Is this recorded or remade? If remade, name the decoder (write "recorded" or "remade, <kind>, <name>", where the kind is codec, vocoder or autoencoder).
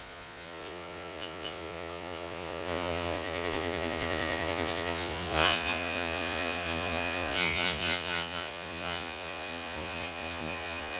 remade, vocoder, Vocos